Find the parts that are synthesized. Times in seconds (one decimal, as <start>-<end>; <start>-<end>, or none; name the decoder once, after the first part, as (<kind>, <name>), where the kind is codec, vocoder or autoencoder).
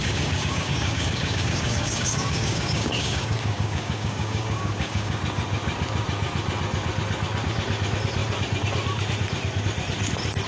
0.0-5.2 (codec, DAC)